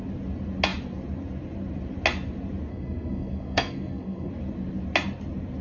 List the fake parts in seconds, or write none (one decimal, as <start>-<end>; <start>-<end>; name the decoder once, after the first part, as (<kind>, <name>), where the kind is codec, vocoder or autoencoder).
2.7-4.3 (codec, SNAC)